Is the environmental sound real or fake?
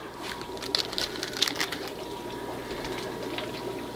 real